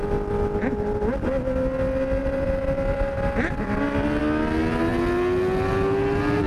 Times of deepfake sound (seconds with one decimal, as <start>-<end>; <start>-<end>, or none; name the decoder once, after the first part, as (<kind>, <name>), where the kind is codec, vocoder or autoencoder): 2.2-4.2 (vocoder, BigVGAN v2)